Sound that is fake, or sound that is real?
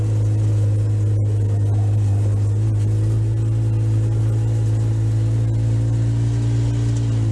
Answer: real